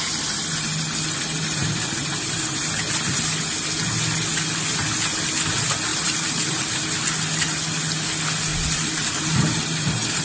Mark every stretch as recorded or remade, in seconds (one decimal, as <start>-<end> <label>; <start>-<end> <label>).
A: 0.0-1.6 recorded; 1.6-2.4 remade; 2.4-5.9 recorded; 5.9-6.8 remade; 6.8-8.5 recorded; 8.5-10.2 remade